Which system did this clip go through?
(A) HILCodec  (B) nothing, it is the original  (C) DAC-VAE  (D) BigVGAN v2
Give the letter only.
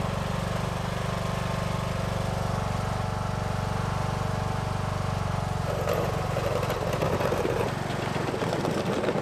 B